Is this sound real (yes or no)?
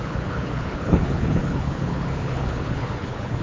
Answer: no